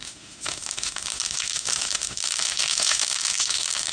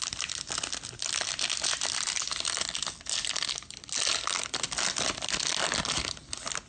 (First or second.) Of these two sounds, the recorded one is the second